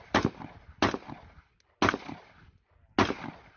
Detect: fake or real real